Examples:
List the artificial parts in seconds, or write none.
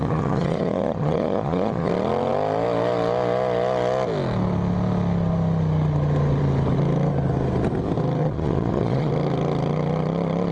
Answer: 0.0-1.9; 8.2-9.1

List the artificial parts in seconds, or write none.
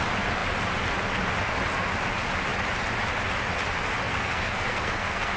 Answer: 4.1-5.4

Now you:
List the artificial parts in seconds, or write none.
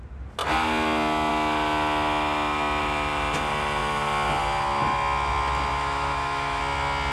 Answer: 5.7-6.6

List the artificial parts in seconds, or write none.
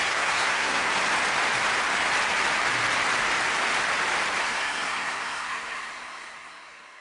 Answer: 0.0-0.9; 4.4-7.0